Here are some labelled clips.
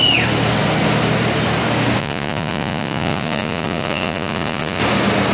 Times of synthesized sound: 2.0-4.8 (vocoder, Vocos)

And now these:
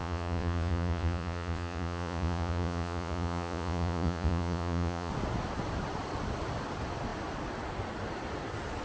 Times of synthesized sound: 0.0-5.1 (vocoder, Vocos)

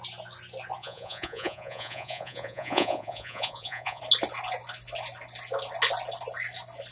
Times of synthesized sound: 0.8-4.0 (vocoder, Vocos)

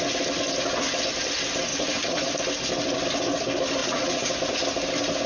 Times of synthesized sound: 1.7-2.3 (vocoder, Vocos); 3.8-4.3